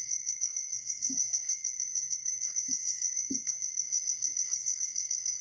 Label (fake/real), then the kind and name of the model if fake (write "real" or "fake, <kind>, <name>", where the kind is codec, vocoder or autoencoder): fake, codec, SNAC